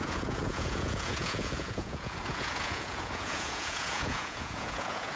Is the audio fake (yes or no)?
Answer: yes